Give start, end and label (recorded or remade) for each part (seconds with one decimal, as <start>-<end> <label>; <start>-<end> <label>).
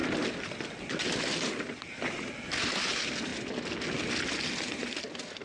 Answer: 0.0-5.4 recorded